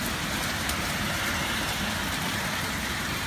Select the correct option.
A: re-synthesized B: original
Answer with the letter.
A